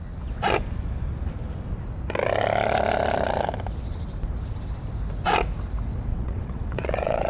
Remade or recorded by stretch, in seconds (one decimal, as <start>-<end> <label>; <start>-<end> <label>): 0.0-6.1 recorded; 6.1-7.3 remade